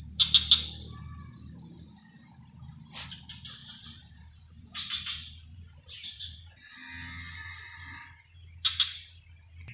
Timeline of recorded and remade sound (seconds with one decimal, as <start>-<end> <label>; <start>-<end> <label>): 0.0-3.6 recorded; 3.6-6.4 remade; 6.4-9.7 recorded